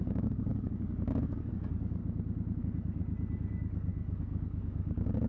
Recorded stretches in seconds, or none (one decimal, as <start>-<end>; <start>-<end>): 2.0-2.6; 3.0-3.5